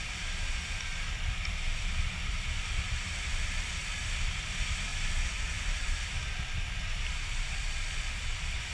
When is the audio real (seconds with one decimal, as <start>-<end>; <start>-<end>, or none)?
0.0-8.7